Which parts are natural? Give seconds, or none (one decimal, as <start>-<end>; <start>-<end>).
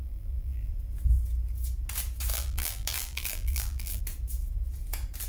0.7-2.3; 4.0-5.3